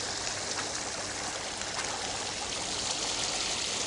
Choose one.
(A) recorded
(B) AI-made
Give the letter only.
A